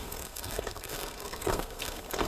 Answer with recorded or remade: remade